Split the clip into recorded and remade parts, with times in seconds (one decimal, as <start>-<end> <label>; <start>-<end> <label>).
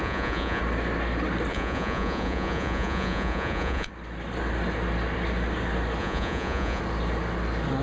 0.0-0.6 remade; 0.6-1.5 recorded; 1.5-3.9 remade; 3.9-6.0 recorded; 6.0-6.8 remade; 6.8-7.8 recorded